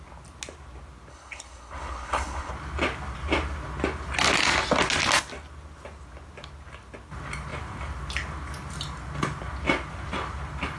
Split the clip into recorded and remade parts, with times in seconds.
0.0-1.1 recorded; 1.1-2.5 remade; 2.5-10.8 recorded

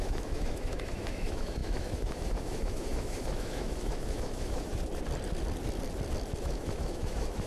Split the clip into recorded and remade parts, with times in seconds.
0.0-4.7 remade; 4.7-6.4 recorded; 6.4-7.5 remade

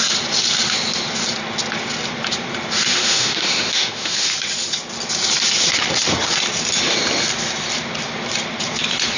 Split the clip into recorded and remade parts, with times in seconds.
0.0-2.9 recorded; 2.9-4.3 remade; 4.3-9.2 recorded

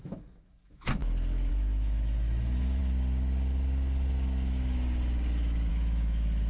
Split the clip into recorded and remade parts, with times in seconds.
0.0-1.0 remade; 1.0-1.5 recorded; 1.5-2.8 remade; 2.8-5.7 recorded; 5.7-6.5 remade

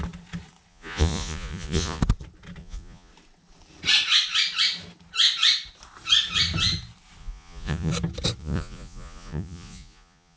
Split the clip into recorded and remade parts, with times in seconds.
0.0-0.7 recorded; 0.7-2.0 remade; 2.0-2.6 recorded; 2.6-3.1 remade; 3.1-7.2 recorded; 7.2-7.9 remade; 7.9-8.4 recorded; 8.4-10.4 remade

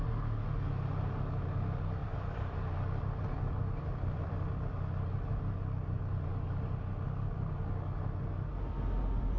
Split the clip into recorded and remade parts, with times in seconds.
0.0-2.0 recorded; 2.0-4.8 remade; 4.8-9.4 recorded

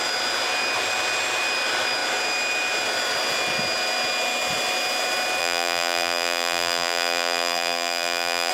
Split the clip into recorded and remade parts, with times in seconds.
0.0-5.4 recorded; 5.4-8.5 remade